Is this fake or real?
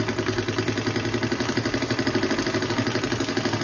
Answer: real